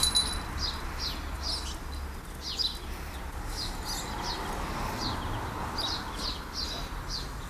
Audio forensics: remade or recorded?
recorded